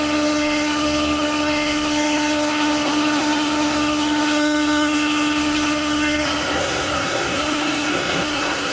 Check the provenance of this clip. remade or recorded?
remade